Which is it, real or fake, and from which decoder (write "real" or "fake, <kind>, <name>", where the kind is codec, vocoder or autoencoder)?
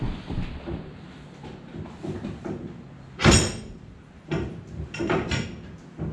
real